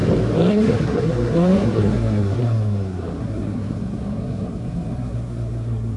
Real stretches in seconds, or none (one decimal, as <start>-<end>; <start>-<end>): 0.0-0.5